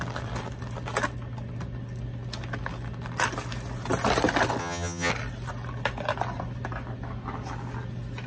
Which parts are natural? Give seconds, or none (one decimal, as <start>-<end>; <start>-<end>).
0.0-4.6; 5.1-8.3